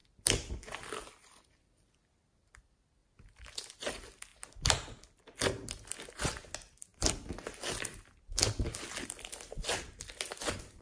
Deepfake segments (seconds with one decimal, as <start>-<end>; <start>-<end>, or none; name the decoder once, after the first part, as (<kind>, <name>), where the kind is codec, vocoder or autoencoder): none